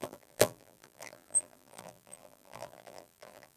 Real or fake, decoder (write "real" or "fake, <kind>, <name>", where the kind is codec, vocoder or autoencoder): fake, vocoder, BigVGAN v2